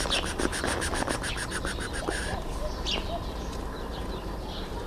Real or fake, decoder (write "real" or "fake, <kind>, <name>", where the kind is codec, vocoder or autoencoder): real